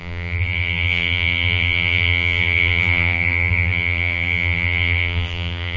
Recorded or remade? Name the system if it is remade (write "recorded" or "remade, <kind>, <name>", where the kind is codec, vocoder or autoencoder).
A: remade, vocoder, BigVGAN v2